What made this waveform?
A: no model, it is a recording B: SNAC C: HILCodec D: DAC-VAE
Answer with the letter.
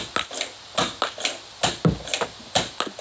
A